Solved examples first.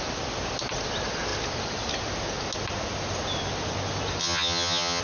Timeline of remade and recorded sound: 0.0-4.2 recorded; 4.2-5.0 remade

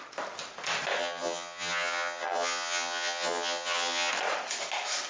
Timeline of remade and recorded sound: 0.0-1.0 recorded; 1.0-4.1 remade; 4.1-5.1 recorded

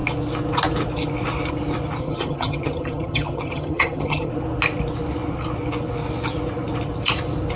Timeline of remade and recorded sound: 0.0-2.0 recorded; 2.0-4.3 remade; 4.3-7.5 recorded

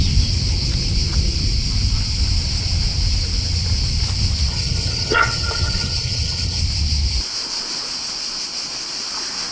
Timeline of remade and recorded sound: 0.0-4.5 recorded; 4.5-6.6 remade; 6.6-9.5 recorded